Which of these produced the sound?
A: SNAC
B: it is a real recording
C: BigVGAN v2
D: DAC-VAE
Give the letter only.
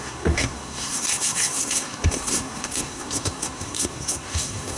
A